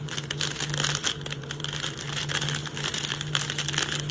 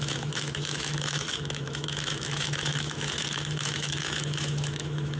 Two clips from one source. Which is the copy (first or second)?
second